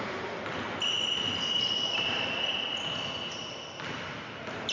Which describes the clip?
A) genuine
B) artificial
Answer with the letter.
A